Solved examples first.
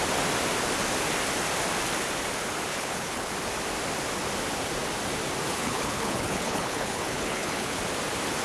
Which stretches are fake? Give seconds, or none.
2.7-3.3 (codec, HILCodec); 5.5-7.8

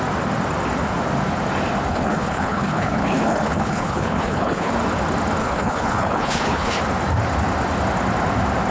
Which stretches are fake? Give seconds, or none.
1.9-4.7 (codec, HILCodec); 5.4-6.8

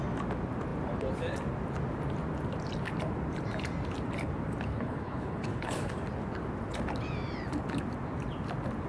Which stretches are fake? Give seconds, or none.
4.7-5.9 (codec, HILCodec)

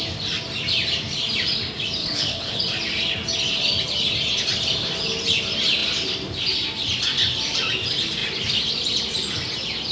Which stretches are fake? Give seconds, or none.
2.0-2.6 (codec, HILCodec)

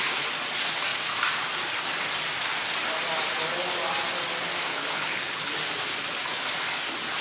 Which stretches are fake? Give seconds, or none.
4.7-5.6 (codec, HILCodec)

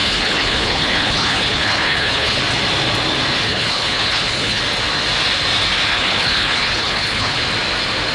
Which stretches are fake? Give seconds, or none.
0.0-2.4 (codec, HILCodec); 3.5-4.6; 5.9-7.4

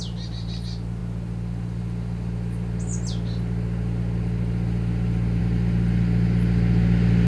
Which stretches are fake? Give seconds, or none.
none